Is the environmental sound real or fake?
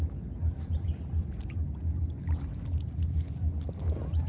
real